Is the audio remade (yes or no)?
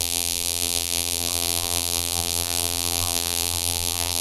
yes